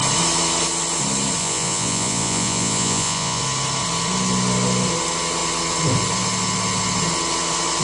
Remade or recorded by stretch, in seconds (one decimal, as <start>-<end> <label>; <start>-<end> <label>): 0.0-1.4 recorded; 1.4-3.4 remade; 3.4-7.8 recorded